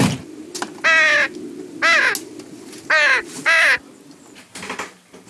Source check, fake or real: real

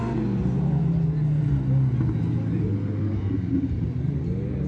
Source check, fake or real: real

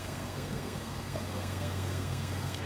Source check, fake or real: fake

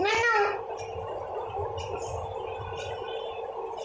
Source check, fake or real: real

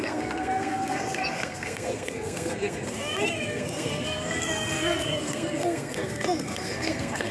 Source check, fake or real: fake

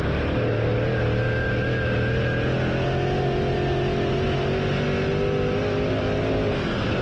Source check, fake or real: real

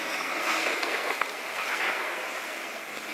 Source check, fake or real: fake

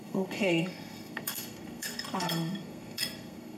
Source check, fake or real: fake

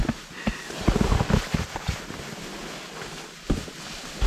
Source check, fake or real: real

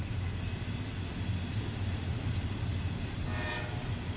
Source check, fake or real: real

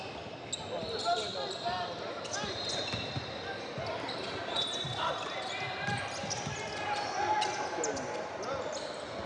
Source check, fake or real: real